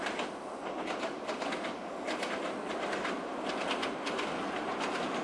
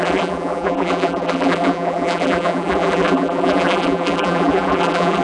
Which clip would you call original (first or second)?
first